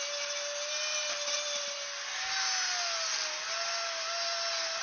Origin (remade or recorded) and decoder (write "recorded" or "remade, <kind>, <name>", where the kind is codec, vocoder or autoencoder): recorded